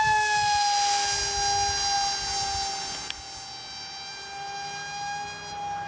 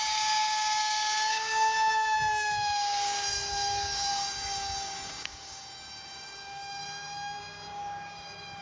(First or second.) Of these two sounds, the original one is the first